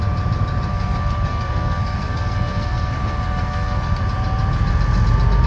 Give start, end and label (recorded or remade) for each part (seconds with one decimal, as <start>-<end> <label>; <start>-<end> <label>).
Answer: 0.0-0.7 recorded; 0.7-4.0 remade; 4.0-5.5 recorded